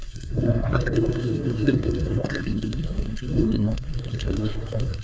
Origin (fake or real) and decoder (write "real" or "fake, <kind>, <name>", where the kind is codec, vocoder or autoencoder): fake, codec, SNAC